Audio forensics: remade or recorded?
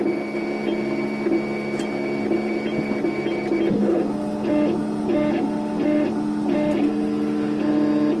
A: recorded